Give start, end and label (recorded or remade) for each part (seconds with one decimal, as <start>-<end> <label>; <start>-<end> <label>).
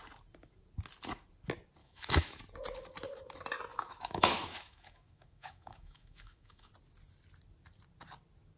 0.0-1.8 recorded; 1.8-2.4 remade; 2.4-3.7 recorded; 3.7-6.7 remade; 6.7-8.6 recorded